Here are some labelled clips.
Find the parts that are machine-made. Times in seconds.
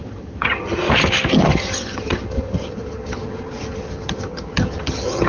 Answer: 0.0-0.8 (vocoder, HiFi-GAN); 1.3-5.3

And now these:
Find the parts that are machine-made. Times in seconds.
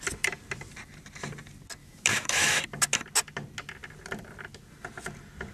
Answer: 1.8-2.6 (autoencoder, DAC-VAE)